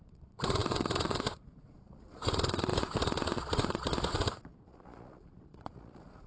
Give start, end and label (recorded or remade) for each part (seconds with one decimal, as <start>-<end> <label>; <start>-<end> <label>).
0.0-6.3 remade